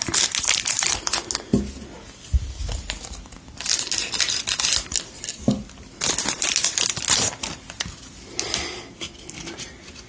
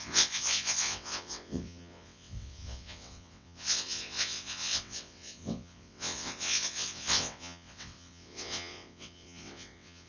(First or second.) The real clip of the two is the first